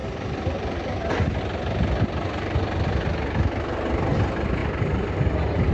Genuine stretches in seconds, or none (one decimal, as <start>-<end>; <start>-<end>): 1.4-4.6; 5.1-5.7